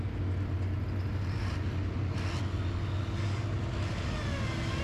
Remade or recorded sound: recorded